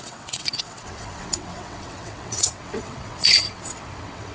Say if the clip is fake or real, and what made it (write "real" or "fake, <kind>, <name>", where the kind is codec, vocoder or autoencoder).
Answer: fake, vocoder, WaveNeXt